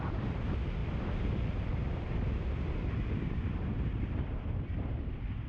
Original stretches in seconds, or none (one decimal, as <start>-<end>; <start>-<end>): 0.0-5.5